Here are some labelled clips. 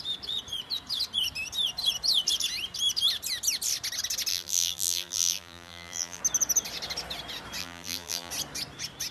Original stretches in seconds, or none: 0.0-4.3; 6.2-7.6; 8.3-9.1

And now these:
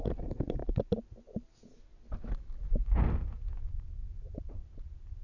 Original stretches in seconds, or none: 0.6-3.7

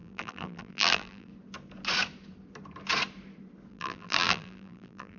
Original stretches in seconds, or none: 1.3-3.7

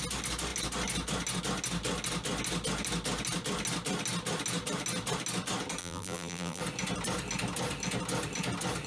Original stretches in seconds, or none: 0.0-5.8; 6.6-8.9

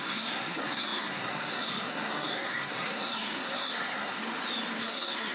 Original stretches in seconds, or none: 4.2-4.8